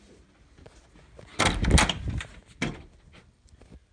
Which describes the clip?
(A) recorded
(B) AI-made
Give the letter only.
A